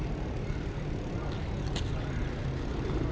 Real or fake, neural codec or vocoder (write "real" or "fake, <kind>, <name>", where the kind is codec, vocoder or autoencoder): real